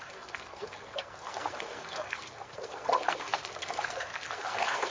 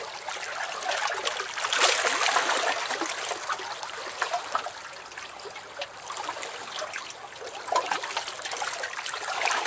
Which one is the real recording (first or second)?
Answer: second